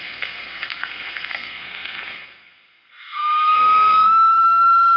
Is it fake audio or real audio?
fake